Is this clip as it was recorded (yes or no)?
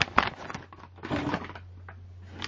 yes